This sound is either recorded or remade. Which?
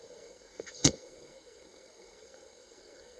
remade